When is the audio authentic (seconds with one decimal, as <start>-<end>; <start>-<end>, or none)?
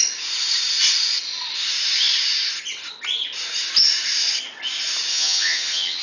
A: 0.0-5.1